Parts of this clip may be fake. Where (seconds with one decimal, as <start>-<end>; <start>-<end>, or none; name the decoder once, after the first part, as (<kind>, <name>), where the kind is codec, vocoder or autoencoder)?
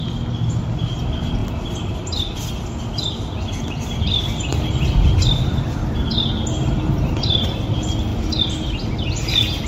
none